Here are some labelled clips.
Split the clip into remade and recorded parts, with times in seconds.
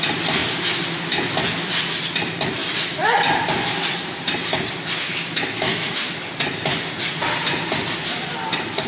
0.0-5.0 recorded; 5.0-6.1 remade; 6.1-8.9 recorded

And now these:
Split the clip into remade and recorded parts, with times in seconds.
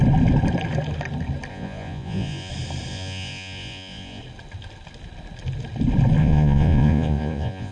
0.0-1.5 recorded; 1.5-2.5 remade; 2.5-2.9 recorded; 2.9-4.2 remade; 4.2-6.2 recorded; 6.2-7.7 remade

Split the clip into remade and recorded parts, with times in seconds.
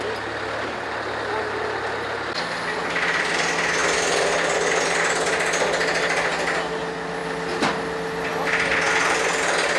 0.0-9.8 recorded